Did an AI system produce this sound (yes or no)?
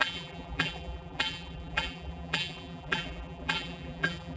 yes